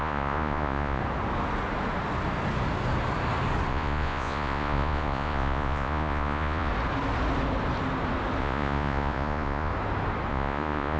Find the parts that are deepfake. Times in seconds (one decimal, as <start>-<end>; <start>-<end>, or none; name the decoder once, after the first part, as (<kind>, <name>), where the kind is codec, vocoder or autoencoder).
0.0-1.0 (vocoder, Vocos); 3.7-6.7; 8.4-9.7; 10.3-11.0